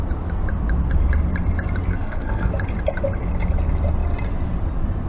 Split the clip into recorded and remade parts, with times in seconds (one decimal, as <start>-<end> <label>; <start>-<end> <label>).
0.0-1.9 recorded; 1.9-2.5 remade; 2.5-5.1 recorded